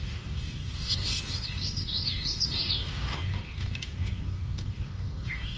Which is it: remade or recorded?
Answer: remade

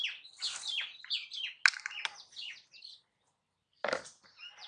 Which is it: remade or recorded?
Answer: recorded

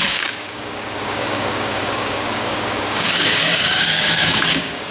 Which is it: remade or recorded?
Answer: remade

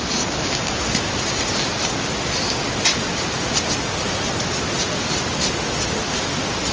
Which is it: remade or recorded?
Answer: recorded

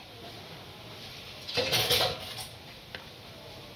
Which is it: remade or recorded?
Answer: recorded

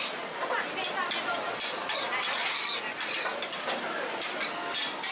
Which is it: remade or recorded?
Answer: recorded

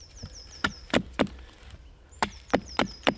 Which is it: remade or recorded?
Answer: remade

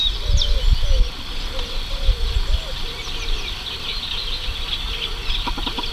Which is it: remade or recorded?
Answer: recorded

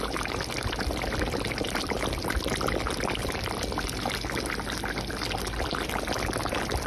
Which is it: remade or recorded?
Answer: remade